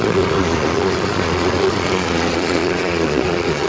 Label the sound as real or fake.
fake